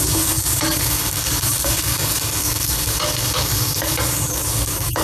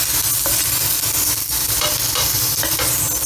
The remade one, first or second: first